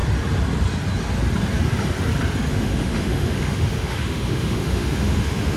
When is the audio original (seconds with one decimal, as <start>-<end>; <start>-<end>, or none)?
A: 0.0-2.5